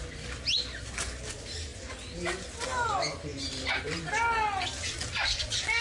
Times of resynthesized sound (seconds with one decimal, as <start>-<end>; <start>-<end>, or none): 3.3-4.0